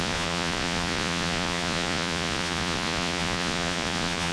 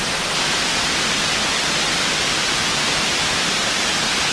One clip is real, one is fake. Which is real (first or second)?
second